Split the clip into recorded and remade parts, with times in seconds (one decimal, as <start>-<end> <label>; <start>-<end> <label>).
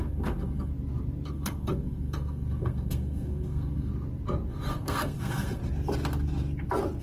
0.0-0.7 remade; 0.7-1.3 recorded; 1.3-3.9 remade; 3.9-4.5 recorded; 4.5-5.6 remade; 5.6-7.0 recorded